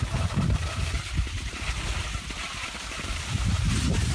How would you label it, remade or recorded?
recorded